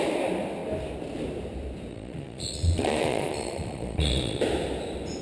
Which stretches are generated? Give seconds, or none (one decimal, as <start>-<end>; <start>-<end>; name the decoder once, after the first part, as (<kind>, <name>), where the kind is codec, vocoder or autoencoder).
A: 1.9-4.4 (vocoder, Vocos)